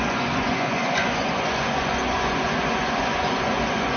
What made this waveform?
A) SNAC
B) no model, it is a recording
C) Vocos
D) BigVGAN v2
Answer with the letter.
C